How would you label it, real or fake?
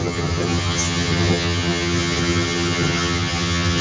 fake